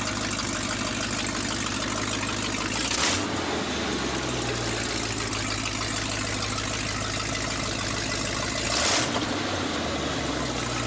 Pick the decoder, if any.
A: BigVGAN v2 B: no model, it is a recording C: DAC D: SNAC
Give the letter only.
B